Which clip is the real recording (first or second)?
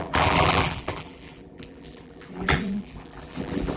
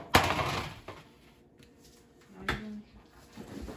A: second